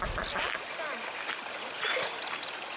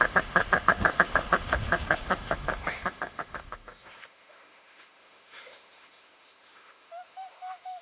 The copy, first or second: second